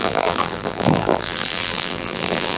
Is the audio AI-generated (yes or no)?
yes